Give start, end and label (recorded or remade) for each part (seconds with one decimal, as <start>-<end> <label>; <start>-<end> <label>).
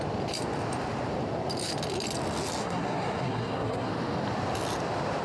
0.0-2.6 recorded; 2.6-3.9 remade; 3.9-5.2 recorded